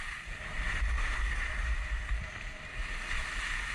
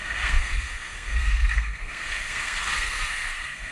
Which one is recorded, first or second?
first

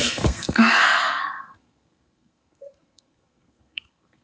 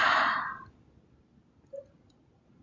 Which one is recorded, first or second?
second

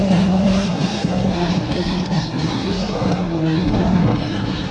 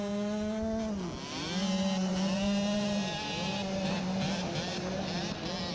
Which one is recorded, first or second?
second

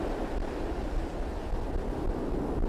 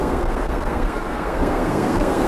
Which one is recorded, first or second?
first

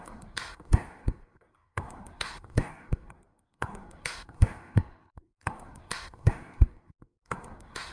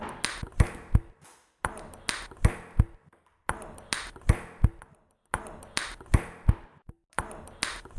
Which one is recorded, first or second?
second